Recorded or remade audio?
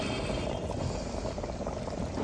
recorded